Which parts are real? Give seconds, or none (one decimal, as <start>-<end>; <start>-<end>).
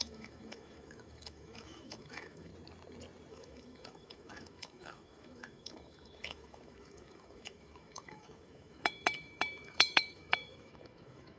2.5-3.3